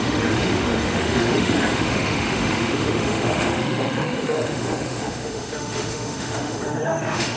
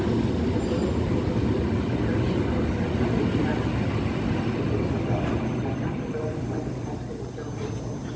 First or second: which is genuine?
second